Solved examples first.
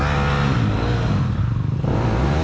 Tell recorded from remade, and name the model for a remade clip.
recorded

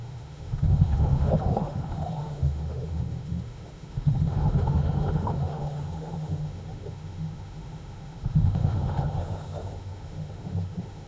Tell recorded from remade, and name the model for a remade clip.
remade, autoencoder, DAC-VAE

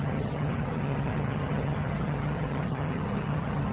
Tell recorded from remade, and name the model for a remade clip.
remade, vocoder, HiFi-GAN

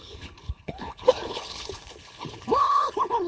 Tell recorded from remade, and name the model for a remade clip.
remade, codec, HILCodec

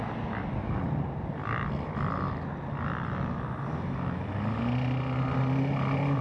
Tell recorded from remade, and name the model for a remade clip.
recorded